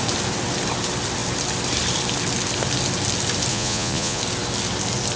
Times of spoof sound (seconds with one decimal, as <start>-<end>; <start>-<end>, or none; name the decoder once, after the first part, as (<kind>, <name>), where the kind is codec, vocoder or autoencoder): 3.5-4.2 (vocoder, Vocos)